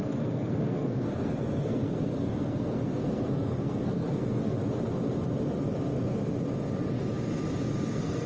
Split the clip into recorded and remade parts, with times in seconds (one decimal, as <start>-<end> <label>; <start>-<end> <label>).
0.0-4.6 remade; 4.6-7.9 recorded; 7.9-8.3 remade